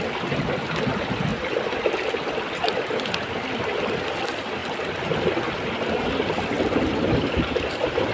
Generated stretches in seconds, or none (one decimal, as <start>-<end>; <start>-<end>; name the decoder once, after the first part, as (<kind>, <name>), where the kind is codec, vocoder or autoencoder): none